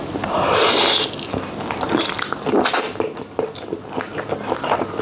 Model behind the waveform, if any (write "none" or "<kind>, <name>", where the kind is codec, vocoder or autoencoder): none